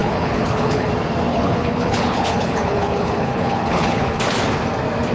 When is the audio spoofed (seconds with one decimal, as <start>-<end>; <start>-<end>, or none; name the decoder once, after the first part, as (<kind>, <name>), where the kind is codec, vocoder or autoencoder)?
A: 0.0-0.9 (codec, HILCodec); 1.3-4.2